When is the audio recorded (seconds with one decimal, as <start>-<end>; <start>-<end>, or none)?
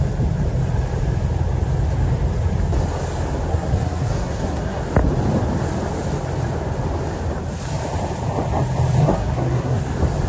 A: 0.0-3.5; 4.8-9.0; 9.8-10.3